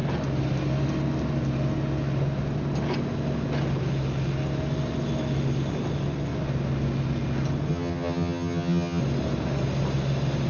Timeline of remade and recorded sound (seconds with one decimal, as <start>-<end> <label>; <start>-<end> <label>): 0.0-7.7 recorded; 7.7-9.0 remade; 9.0-10.5 recorded